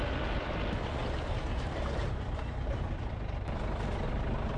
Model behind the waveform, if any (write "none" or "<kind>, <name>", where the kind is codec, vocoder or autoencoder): none